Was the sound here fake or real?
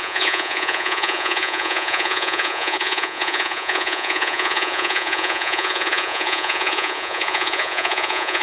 fake